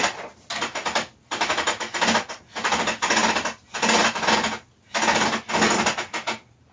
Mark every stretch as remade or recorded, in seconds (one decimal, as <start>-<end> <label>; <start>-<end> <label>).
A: 0.0-6.7 recorded